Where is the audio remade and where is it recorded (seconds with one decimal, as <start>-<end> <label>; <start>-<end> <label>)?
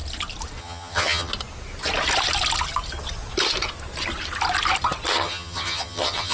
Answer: 0.0-0.6 recorded; 0.6-1.3 remade; 1.3-5.1 recorded; 5.1-6.3 remade